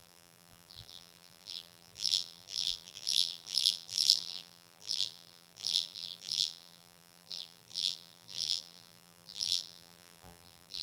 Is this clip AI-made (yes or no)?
yes